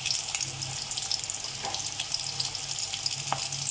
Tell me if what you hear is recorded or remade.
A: recorded